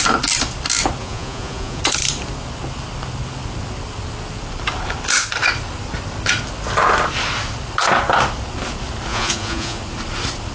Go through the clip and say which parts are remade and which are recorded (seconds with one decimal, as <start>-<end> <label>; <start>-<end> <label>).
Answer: 0.0-1.0 recorded; 1.0-1.8 remade; 1.8-9.1 recorded; 9.1-9.8 remade; 9.8-10.5 recorded